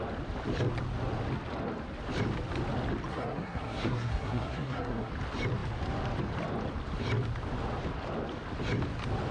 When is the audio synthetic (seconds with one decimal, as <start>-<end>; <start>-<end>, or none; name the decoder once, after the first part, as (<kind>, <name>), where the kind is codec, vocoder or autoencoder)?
3.1-5.1 (codec, SNAC)